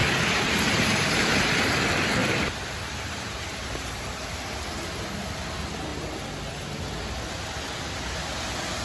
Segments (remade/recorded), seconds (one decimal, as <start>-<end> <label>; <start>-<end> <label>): 0.0-1.7 remade; 1.7-2.2 recorded; 2.2-4.2 remade; 4.2-5.9 recorded; 5.9-6.7 remade; 6.7-8.8 recorded